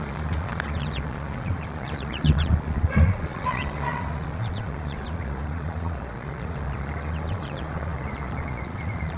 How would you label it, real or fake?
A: fake